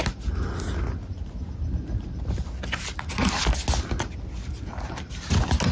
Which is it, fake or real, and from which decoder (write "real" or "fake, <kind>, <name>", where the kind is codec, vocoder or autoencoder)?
real